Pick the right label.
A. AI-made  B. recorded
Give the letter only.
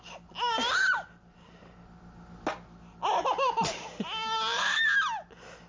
B